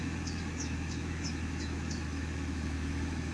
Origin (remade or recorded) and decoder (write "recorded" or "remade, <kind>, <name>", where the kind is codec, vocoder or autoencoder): remade, autoencoder, DAC-VAE